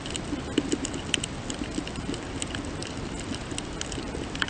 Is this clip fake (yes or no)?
no